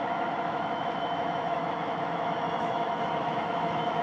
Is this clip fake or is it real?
fake